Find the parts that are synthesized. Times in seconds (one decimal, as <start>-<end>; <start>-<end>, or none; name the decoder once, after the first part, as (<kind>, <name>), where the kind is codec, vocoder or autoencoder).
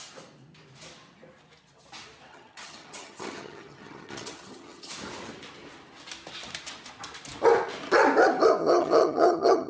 2.3-4.9 (vocoder, HiFi-GAN); 8.6-9.7